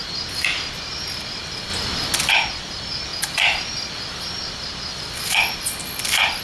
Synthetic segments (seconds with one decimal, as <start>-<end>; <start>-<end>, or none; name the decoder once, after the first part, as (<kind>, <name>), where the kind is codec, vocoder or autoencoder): none